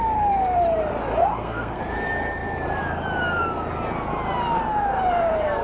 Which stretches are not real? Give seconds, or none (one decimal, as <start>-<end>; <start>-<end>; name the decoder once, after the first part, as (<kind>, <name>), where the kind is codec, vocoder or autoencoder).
1.2-1.8 (codec, SNAC)